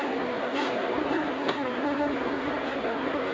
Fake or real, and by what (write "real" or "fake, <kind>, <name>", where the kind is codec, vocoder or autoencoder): fake, codec, SNAC